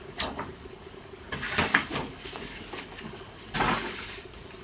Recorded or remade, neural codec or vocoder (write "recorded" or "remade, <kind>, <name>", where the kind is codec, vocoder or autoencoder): remade, codec, DAC